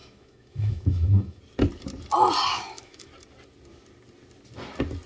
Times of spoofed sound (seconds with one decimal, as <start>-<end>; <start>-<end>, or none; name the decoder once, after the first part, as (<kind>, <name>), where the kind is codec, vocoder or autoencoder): 0.0-1.4 (autoencoder, DAC-VAE); 2.5-3.1